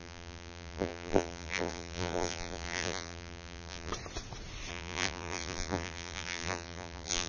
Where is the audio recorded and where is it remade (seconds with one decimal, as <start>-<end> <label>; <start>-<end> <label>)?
0.0-3.9 remade; 3.9-4.7 recorded; 4.7-7.3 remade